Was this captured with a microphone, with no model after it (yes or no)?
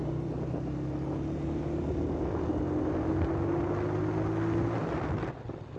yes